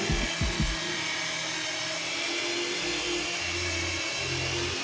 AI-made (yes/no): no